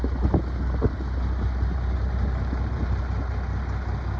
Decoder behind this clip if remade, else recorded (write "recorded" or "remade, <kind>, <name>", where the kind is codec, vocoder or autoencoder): recorded